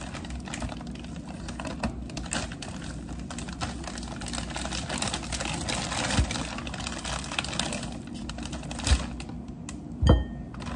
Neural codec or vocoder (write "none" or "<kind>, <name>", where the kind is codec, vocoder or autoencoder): none